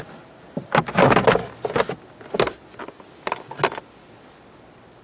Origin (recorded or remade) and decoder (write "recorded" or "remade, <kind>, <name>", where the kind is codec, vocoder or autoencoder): recorded